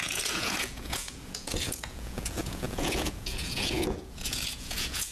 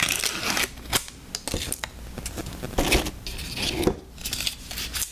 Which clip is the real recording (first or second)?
second